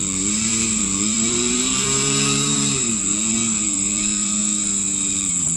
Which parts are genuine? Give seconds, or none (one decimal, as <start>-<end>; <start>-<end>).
4.4-5.1